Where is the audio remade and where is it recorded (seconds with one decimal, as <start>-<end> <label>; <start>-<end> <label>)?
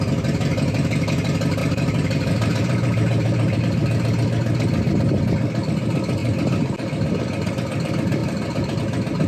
0.0-1.6 recorded; 1.6-3.6 remade; 3.6-8.2 recorded; 8.2-8.8 remade; 8.8-9.3 recorded